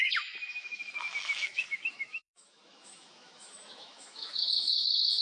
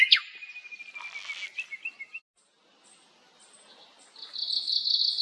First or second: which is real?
second